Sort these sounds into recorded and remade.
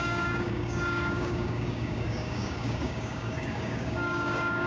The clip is remade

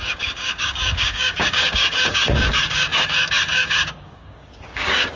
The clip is remade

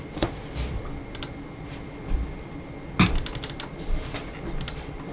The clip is recorded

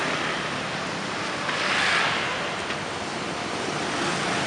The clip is recorded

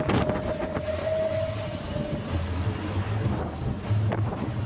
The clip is recorded